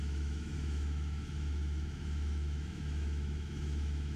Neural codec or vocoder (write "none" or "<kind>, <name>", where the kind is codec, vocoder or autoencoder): autoencoder, DAC-VAE